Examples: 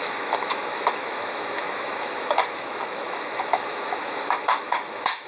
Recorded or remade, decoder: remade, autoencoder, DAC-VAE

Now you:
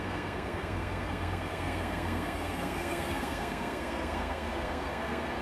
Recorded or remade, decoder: remade, codec, SNAC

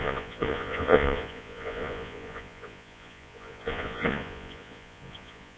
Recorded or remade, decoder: remade, vocoder, Vocos